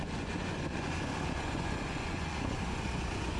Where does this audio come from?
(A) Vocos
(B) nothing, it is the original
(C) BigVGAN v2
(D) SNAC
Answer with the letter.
A